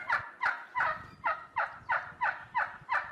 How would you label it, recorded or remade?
recorded